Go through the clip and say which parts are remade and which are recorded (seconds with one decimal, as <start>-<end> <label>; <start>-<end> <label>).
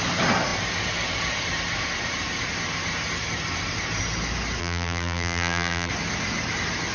0.0-4.6 recorded; 4.6-5.9 remade; 5.9-6.9 recorded